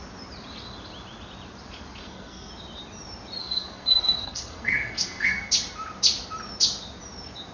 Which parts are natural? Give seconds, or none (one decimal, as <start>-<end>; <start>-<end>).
0.0-2.0; 2.5-3.4; 5.5-7.5